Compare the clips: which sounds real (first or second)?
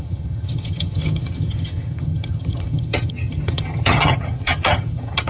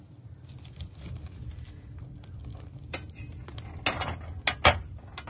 second